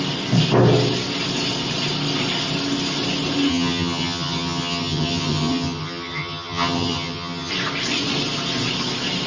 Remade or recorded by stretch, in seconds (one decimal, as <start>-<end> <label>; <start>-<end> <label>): 0.0-3.5 recorded; 3.5-7.5 remade; 7.5-9.3 recorded